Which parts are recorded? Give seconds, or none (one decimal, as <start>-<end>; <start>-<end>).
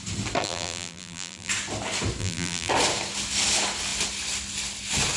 0.0-0.4; 1.5-2.2; 2.7-5.2